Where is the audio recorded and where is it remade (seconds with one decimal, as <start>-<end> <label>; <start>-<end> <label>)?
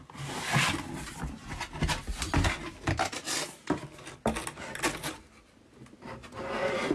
0.0-2.6 recorded; 2.6-3.8 remade; 3.8-6.9 recorded